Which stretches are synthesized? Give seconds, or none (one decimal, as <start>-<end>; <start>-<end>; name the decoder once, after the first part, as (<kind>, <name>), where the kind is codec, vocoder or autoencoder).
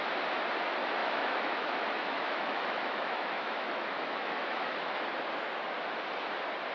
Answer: 1.0-5.0 (autoencoder, DAC-VAE)